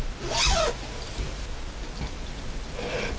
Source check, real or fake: real